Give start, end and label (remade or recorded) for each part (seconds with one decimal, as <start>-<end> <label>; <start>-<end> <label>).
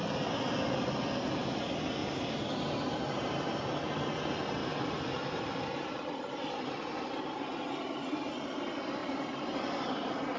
0.0-2.0 recorded; 2.0-3.4 remade; 3.4-4.6 recorded; 4.6-7.4 remade; 7.4-9.0 recorded; 9.0-10.4 remade